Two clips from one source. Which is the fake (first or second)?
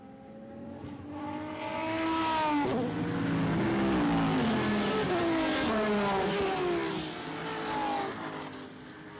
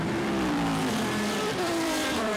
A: second